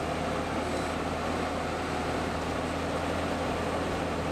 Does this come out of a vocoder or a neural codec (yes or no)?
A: no